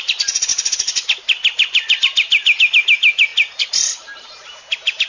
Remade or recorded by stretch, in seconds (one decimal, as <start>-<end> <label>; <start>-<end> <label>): 0.0-5.1 recorded